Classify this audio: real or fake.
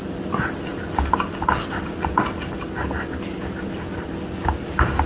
real